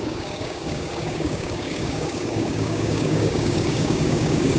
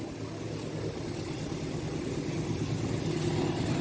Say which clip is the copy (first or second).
first